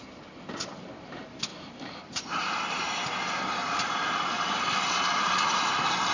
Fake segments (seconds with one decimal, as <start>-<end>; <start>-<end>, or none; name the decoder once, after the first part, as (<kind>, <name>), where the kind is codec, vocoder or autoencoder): 1.5-4.3 (vocoder, BigVGAN v2)